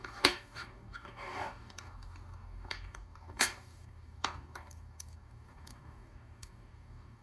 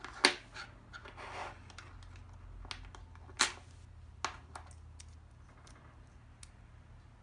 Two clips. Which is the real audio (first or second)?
second